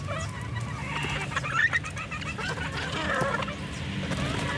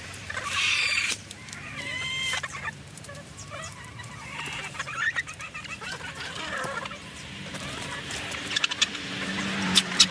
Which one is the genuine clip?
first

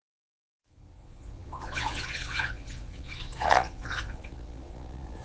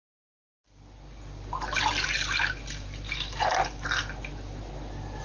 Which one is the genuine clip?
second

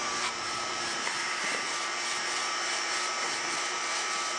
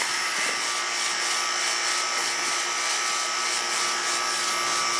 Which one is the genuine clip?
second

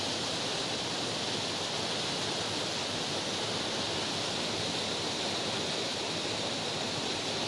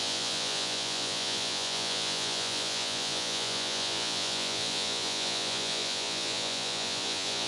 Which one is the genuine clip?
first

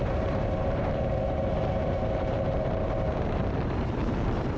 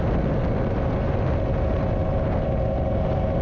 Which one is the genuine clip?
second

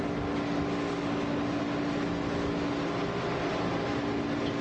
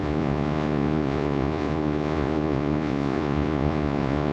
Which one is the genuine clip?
first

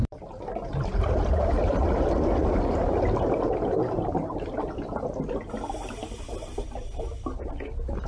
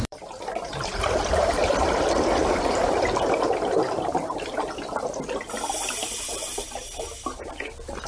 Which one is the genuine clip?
first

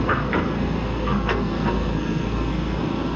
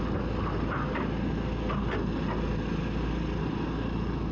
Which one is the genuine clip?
second